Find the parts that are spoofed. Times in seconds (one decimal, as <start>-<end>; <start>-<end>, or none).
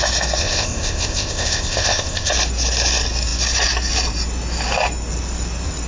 0.4-2.3